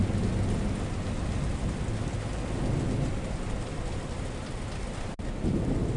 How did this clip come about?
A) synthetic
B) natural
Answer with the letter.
B